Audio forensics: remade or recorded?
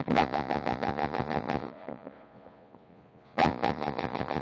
remade